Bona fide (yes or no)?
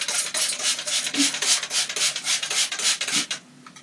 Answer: yes